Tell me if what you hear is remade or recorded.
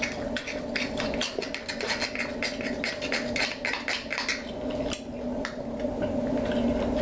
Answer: recorded